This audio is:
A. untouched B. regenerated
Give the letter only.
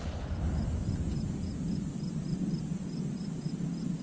B